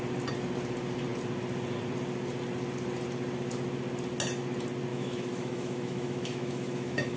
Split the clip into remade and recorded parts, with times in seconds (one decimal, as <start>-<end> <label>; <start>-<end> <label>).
0.0-4.9 recorded; 4.9-7.2 remade

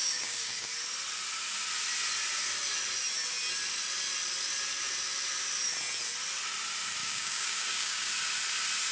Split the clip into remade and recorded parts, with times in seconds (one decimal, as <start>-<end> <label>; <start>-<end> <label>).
0.0-0.7 remade; 0.7-7.0 recorded; 7.0-8.1 remade; 8.1-8.9 recorded